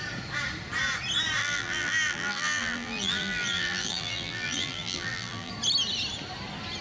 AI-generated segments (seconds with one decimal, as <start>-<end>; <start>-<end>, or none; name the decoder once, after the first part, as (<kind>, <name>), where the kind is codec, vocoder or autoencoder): 1.4-5.5 (vocoder, BigVGAN v2)